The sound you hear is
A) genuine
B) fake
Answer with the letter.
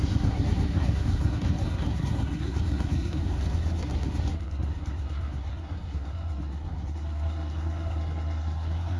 B